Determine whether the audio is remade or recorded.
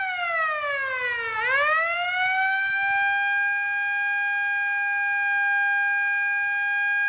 recorded